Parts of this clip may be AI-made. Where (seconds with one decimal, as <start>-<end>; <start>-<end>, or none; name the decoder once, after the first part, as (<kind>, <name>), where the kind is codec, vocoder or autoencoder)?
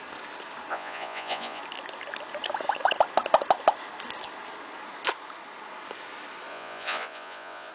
0.7-1.6 (vocoder, Vocos); 6.5-7.7